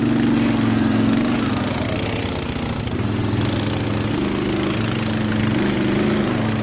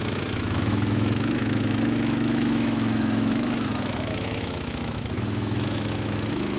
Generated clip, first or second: second